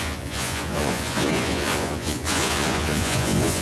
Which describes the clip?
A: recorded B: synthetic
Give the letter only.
B